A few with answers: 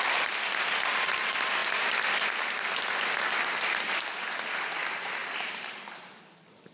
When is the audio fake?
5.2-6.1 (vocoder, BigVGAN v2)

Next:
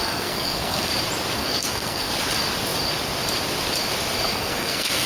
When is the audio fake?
0.0-0.9 (codec, SNAC); 1.4-2.1; 4.3-5.1

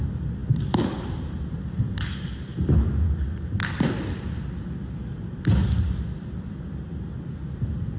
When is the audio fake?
none